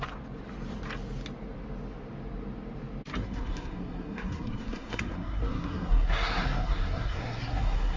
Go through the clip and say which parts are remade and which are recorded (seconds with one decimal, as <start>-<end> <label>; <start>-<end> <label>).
0.0-3.2 recorded; 3.2-8.0 remade